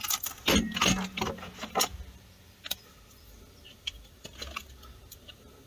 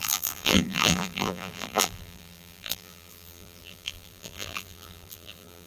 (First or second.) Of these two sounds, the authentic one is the first